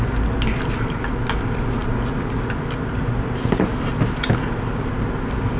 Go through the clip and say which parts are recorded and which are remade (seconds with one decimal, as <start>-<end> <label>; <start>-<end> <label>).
0.0-5.6 recorded